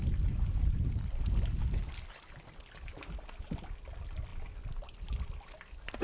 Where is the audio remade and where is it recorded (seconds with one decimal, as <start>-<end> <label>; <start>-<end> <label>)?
0.0-6.0 recorded